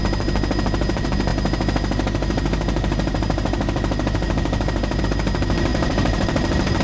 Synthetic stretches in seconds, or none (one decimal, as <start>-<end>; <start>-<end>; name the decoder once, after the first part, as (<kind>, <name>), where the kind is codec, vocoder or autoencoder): 5.7-6.8 (vocoder, BigVGAN v2)